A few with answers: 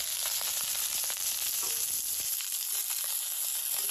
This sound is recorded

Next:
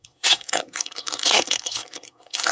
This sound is remade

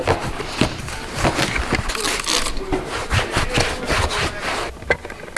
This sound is recorded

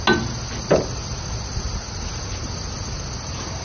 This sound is recorded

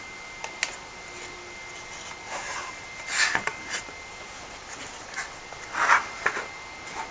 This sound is recorded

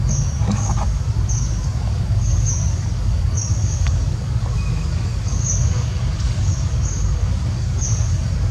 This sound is remade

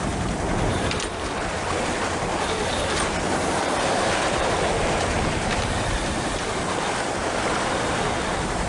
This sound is remade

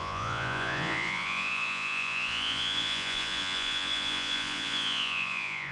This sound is remade